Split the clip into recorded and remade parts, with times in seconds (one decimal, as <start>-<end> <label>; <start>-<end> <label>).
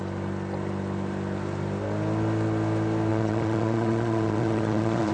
0.0-3.1 recorded; 3.1-5.1 remade